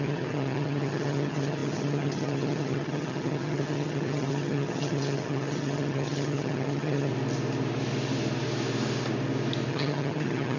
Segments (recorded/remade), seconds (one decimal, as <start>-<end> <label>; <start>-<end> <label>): 0.0-7.1 remade; 7.1-9.7 recorded; 9.7-10.6 remade